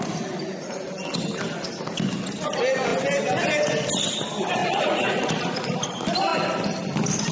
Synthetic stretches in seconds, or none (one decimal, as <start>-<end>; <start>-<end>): 4.6-5.6